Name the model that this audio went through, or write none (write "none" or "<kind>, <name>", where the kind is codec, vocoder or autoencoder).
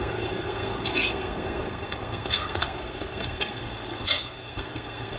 codec, SNAC